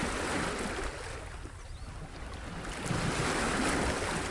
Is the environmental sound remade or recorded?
recorded